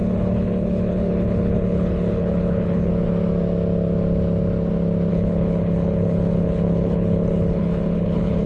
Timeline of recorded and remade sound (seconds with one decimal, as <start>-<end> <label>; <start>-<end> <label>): 0.0-2.9 remade; 2.9-5.1 recorded; 5.1-8.5 remade